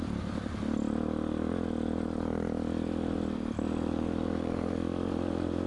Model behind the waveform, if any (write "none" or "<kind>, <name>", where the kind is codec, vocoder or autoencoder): none